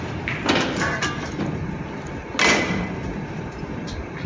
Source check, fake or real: real